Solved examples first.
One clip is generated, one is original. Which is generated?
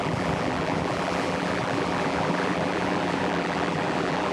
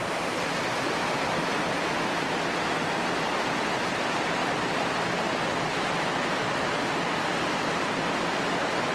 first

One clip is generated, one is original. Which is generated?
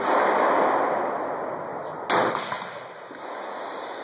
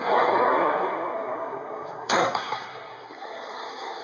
second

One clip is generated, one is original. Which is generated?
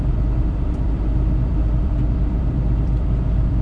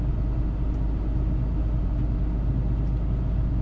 first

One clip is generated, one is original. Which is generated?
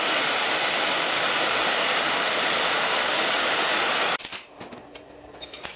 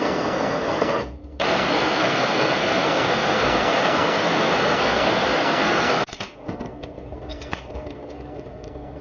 second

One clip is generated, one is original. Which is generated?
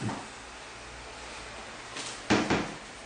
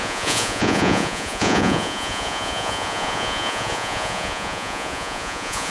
second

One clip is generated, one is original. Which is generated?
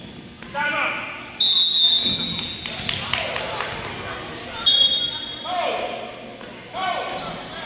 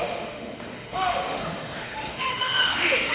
second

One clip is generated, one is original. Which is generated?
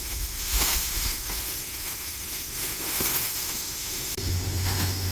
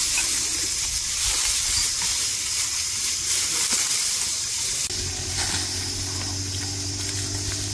first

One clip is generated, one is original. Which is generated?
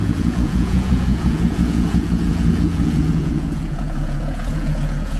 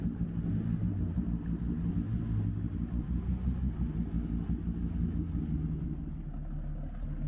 first